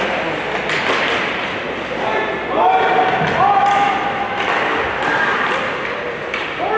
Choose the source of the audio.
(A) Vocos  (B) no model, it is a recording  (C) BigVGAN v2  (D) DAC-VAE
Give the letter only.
B